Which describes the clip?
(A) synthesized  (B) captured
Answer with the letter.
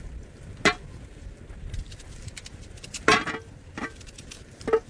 B